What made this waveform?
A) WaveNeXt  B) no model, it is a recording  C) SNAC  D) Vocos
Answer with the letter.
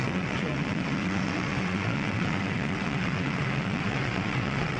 A